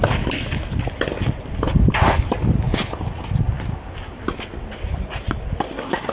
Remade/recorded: recorded